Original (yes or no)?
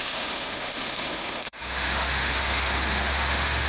no